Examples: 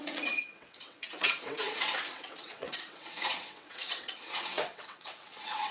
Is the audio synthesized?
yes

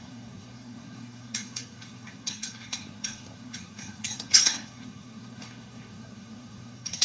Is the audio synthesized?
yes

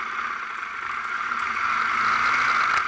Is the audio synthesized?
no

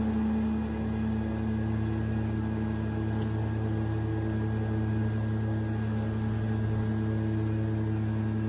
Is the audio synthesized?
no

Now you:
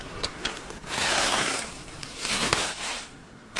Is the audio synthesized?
yes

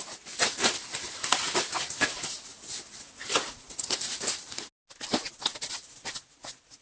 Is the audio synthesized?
no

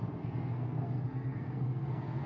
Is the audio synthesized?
yes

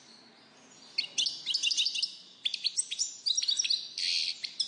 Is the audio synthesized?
no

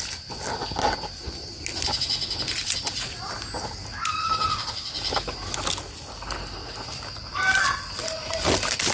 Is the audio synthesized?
no